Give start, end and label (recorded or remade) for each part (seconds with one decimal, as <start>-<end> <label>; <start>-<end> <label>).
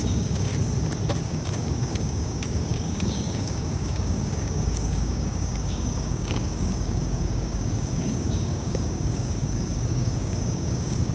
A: 0.0-0.5 remade; 0.5-1.2 recorded; 1.2-11.1 remade